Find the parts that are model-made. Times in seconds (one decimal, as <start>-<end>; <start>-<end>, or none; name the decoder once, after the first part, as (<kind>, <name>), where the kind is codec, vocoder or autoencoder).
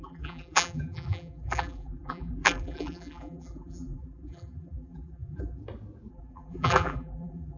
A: 0.0-5.6 (vocoder, BigVGAN v2); 6.1-7.6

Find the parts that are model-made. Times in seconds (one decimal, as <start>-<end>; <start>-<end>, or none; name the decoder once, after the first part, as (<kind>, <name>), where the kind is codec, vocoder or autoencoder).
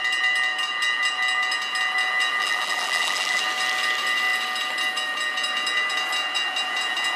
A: 2.4-3.4 (vocoder, BigVGAN v2)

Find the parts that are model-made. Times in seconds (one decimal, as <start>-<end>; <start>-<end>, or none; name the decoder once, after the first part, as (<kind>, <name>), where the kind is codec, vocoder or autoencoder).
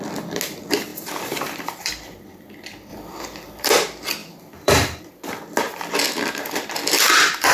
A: 0.9-1.9 (vocoder, BigVGAN v2); 2.9-3.7; 4.2-5.1